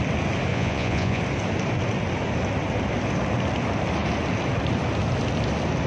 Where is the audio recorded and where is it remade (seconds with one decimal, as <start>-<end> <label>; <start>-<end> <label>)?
0.0-0.5 recorded; 0.5-1.2 remade; 1.2-5.9 recorded